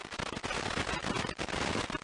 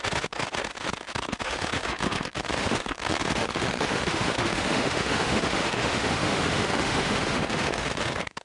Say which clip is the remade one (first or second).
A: second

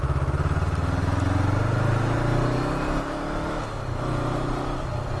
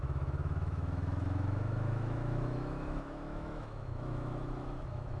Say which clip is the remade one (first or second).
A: second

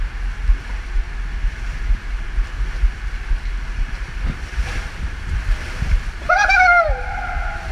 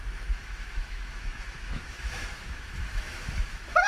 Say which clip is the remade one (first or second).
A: second